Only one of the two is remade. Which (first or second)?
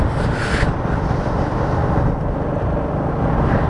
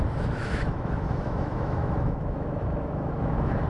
second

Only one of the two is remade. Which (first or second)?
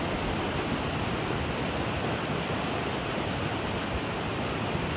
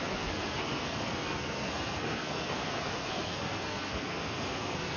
second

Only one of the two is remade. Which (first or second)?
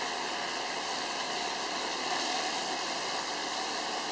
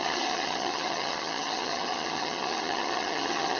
second